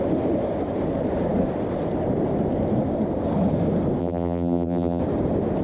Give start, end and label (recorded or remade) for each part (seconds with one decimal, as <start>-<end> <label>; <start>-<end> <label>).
0.0-4.0 recorded; 4.0-5.0 remade; 5.0-5.6 recorded